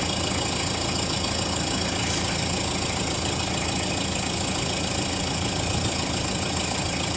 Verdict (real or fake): real